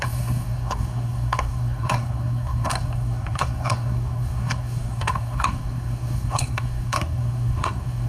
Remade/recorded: remade